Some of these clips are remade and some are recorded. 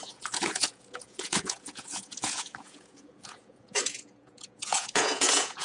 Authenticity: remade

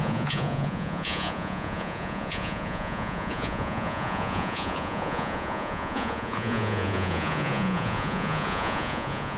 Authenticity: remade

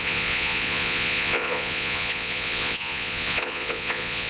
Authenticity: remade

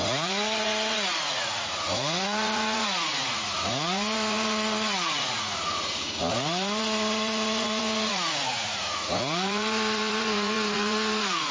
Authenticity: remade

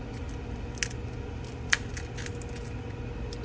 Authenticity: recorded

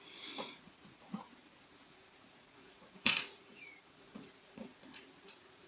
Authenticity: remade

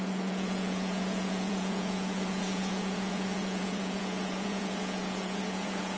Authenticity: remade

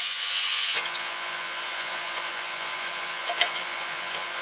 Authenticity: remade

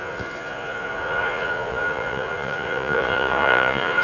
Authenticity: remade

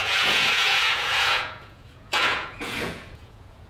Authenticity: remade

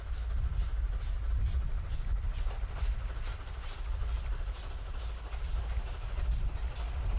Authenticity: recorded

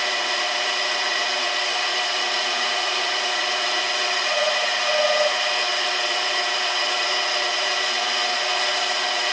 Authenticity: remade